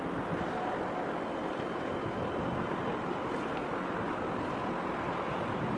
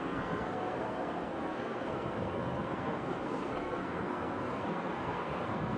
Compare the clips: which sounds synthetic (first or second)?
second